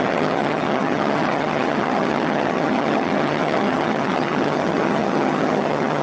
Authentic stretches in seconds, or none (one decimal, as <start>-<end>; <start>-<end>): none